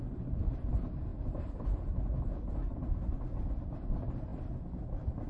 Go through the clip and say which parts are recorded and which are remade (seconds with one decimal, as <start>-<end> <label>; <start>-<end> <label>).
0.0-5.3 recorded